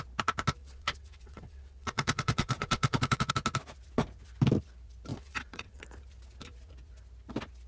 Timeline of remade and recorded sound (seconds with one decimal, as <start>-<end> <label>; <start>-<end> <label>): 0.0-0.6 recorded; 0.6-3.3 remade; 3.3-5.1 recorded; 5.1-5.8 remade; 5.8-7.7 recorded